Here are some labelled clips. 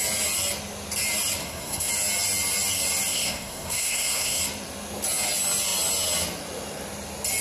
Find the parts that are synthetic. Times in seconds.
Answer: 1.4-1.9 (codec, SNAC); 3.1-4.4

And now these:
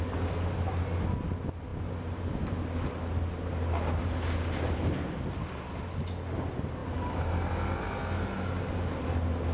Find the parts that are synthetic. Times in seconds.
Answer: none

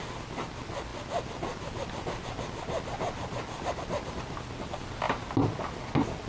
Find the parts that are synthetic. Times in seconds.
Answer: none

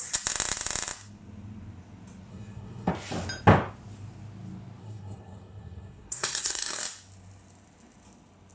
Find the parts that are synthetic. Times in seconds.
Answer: 2.3-2.9 (codec, SNAC); 4.8-6.8

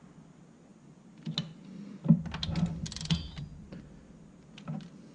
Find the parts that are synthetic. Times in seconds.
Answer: none